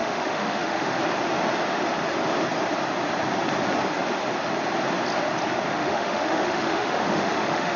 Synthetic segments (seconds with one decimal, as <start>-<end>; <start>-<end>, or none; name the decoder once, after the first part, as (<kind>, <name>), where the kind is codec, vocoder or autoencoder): 0.0-1.0 (autoencoder, DAC-VAE); 5.7-7.8